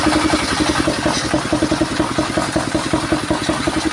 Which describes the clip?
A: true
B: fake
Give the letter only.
A